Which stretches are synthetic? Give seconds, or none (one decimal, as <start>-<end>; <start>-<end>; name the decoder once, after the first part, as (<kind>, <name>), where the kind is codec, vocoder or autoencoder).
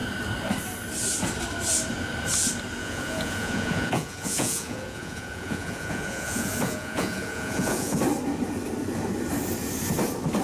2.8-8.0 (vocoder, Vocos)